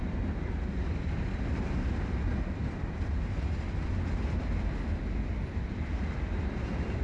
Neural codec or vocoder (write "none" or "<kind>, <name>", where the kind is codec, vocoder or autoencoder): none